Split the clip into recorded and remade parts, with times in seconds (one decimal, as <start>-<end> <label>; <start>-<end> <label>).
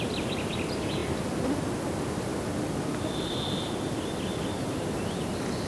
0.0-5.7 recorded